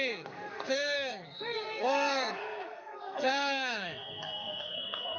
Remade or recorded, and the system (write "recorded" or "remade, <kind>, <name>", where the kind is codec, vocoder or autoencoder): remade, codec, SNAC